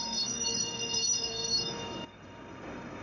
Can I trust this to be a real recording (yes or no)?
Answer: no